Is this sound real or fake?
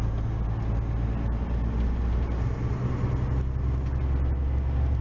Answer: real